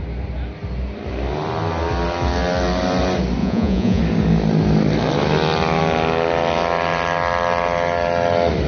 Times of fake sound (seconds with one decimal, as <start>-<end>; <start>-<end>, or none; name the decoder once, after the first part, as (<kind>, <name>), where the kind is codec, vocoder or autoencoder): 3.4-4.0 (vocoder, Vocos)